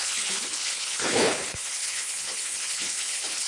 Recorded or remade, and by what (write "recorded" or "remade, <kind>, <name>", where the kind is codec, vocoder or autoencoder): remade, codec, HILCodec